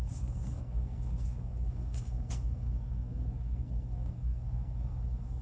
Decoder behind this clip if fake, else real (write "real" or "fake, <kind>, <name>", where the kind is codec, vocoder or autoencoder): fake, codec, SNAC